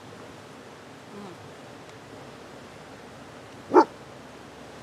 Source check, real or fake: real